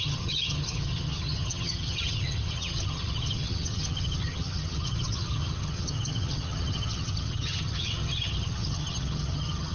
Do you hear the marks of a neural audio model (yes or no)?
yes